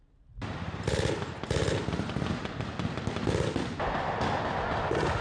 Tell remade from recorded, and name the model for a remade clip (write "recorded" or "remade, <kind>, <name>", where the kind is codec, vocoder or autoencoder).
recorded